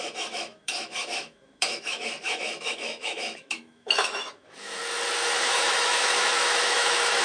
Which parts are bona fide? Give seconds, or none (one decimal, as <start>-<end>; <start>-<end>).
4.8-5.4